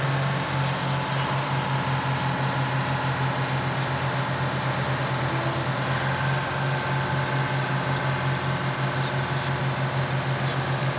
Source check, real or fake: real